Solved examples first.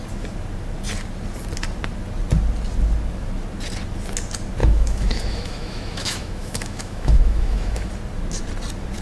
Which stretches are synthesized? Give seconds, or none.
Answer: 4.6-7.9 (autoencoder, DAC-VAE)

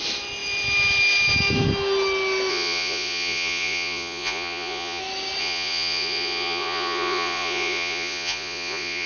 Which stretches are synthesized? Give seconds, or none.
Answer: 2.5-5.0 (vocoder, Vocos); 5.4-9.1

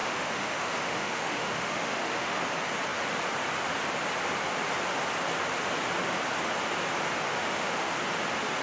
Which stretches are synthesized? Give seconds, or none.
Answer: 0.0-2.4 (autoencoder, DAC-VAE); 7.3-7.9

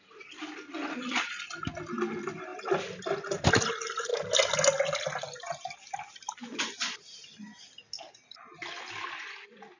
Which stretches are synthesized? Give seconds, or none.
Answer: none

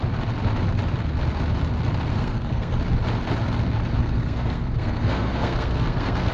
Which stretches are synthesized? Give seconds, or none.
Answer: 2.1-2.8 (codec, SNAC); 4.0-6.3

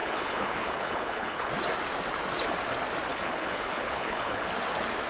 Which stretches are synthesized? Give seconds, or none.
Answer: 0.0-1.5 (codec, HILCodec); 3.1-4.5

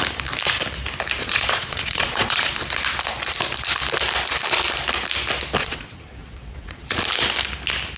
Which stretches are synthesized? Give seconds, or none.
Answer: 1.2-2.5 (vocoder, Vocos); 5.6-7.0

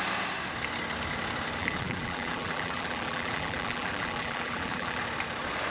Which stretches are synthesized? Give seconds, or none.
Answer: 1.6-5.0 (vocoder, BigVGAN v2)